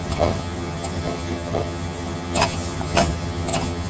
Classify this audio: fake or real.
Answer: fake